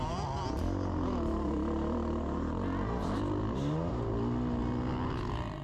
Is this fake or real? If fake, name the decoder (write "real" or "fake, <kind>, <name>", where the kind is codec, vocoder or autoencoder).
real